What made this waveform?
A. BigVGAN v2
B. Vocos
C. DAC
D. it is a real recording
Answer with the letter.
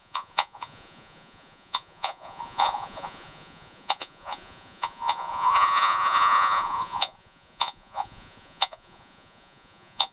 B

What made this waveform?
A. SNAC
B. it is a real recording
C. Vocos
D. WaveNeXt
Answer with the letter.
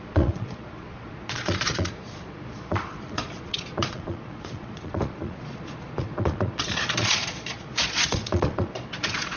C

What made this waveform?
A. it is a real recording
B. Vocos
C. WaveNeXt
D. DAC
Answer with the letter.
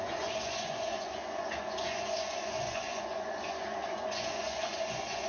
B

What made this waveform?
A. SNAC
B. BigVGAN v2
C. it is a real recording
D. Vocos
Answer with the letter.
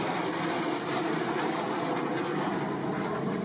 C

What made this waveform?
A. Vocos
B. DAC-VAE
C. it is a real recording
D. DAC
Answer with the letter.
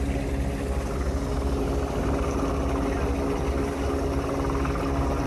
C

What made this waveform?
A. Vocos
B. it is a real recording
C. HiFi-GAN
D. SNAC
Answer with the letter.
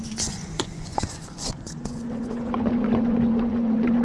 A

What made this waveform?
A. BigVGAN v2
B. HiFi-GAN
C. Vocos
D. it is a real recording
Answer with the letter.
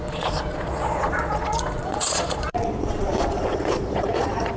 C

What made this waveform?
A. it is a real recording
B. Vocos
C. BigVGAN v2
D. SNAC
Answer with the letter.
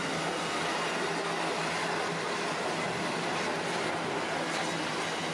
A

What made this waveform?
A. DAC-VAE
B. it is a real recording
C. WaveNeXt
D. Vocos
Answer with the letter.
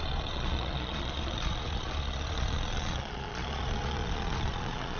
D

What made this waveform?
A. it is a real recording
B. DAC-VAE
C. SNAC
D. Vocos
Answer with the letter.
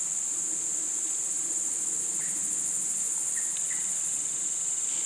A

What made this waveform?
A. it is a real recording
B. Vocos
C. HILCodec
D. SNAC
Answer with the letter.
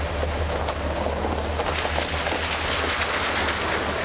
A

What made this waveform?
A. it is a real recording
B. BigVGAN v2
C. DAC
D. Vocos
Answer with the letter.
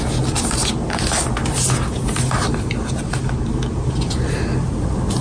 A